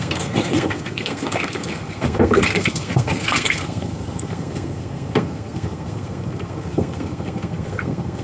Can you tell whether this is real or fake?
fake